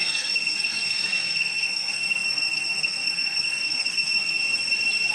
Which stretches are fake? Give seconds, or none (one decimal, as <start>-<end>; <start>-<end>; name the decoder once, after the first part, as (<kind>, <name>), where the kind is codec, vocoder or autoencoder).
0.0-4.4 (codec, SNAC)